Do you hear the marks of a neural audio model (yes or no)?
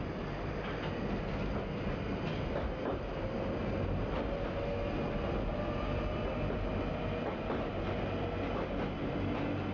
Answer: no